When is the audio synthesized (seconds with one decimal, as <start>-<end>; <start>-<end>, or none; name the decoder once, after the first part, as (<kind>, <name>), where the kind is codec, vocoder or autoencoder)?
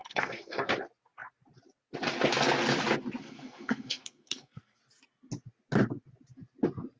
0.0-0.7 (codec, SNAC); 3.2-4.8